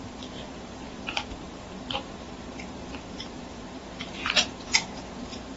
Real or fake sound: fake